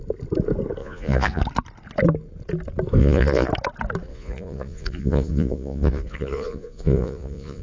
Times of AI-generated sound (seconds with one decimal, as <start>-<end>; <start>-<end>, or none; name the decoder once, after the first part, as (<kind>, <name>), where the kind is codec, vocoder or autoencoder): 0.8-1.4 (vocoder, Vocos); 3.0-3.5; 4.1-7.6